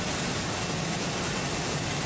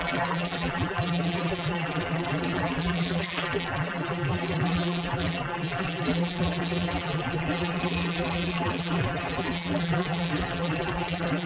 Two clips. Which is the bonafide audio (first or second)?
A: first